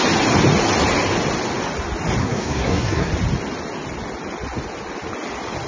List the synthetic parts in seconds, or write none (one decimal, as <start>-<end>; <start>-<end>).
2.2-3.1